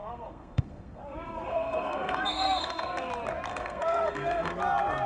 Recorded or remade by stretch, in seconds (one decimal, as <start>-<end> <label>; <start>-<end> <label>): 0.0-3.1 remade; 3.1-3.5 recorded; 3.5-4.6 remade; 4.6-5.1 recorded